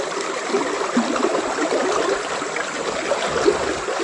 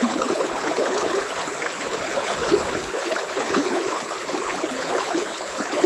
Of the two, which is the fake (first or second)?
second